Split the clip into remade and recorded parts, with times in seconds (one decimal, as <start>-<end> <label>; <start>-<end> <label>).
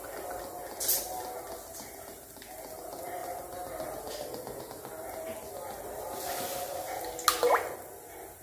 0.0-8.4 recorded